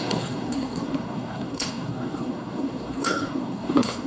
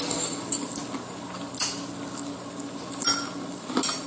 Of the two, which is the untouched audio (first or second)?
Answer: second